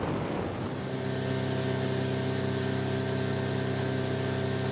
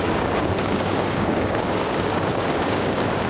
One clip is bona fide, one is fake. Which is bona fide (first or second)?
first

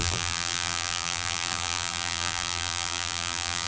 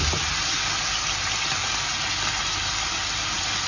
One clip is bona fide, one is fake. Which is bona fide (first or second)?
second